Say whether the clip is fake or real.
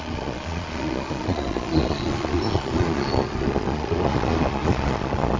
fake